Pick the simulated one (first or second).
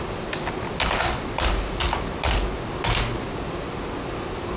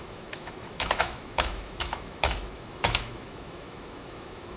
second